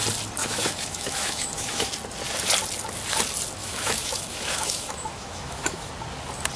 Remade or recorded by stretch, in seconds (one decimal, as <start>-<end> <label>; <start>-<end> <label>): 0.0-0.4 recorded; 0.4-1.9 remade; 1.9-3.6 recorded; 3.6-5.9 remade; 5.9-6.6 recorded